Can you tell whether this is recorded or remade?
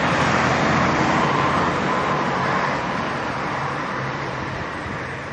remade